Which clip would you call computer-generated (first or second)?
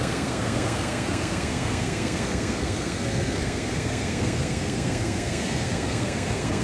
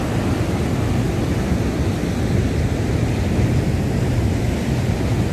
first